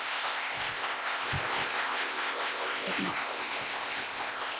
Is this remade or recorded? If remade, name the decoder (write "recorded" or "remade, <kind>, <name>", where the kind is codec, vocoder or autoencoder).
remade, codec, ZipCodec